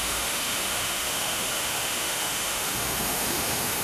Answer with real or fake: fake